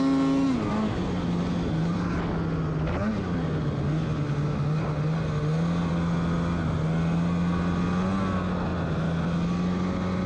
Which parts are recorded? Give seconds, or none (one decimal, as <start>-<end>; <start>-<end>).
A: 0.0-10.3